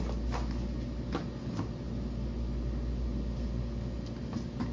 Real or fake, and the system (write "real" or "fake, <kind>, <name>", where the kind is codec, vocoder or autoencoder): real